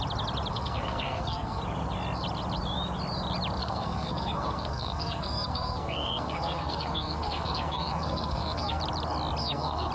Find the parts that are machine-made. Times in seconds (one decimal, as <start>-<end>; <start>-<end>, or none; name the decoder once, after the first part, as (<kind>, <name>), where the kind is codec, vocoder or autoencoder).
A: 0.5-1.6 (codec, SNAC); 3.6-8.8; 9.4-9.9